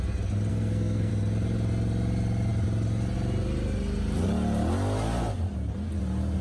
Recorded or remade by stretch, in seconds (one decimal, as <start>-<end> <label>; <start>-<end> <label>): 0.0-0.5 recorded; 0.5-1.1 remade; 1.1-6.4 recorded